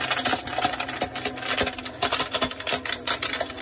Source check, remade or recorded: recorded